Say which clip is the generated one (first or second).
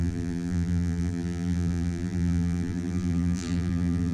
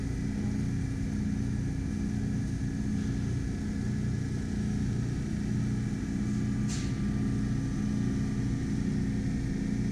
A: first